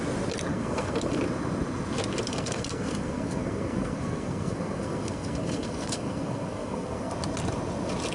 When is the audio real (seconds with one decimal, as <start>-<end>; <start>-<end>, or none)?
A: 0.0-0.5; 1.2-2.3; 7.1-8.1